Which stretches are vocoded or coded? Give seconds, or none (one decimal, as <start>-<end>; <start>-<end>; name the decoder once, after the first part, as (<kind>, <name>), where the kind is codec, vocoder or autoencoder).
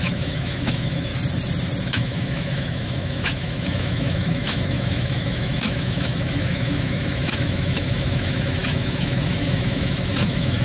0.0-1.1 (autoencoder, DAC-VAE); 1.8-10.6